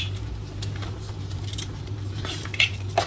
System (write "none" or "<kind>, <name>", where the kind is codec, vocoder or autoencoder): vocoder, BigVGAN v2